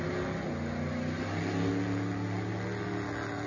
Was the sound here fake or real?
real